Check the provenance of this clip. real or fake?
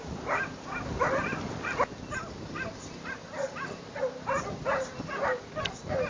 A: real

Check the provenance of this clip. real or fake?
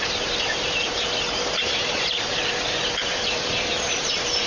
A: fake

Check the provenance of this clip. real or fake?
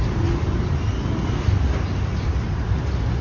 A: real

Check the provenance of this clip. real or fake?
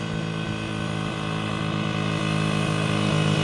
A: real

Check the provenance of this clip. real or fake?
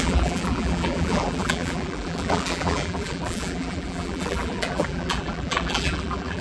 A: fake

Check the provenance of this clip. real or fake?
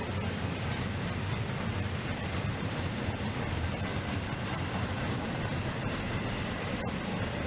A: fake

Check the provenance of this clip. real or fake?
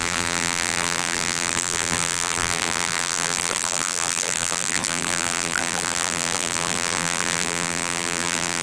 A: fake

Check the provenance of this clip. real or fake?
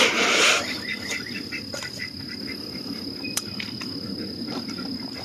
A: real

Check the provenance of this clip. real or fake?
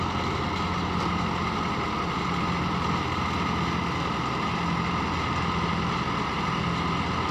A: real